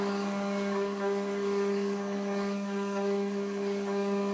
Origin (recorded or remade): remade